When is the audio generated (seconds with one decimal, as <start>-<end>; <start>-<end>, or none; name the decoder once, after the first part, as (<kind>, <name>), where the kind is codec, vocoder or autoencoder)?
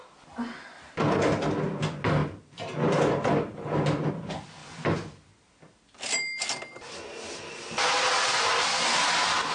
none